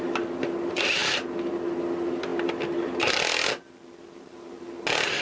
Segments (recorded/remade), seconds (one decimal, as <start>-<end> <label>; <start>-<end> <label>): 0.0-5.2 recorded